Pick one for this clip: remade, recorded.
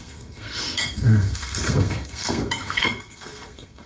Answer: remade